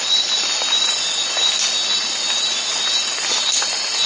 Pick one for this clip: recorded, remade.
recorded